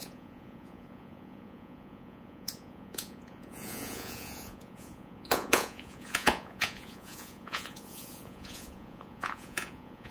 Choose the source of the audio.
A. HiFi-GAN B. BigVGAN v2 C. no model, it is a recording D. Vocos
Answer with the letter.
D